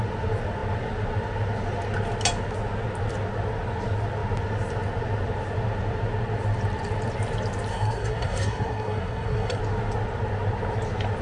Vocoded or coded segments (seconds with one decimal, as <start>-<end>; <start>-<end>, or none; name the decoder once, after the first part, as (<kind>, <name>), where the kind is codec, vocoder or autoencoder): 7.7-9.6 (codec, SNAC)